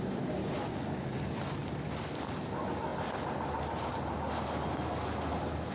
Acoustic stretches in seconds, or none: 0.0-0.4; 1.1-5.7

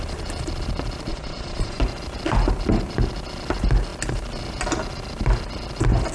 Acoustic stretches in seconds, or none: 0.0-1.1; 1.8-6.1